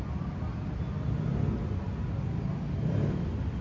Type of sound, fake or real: real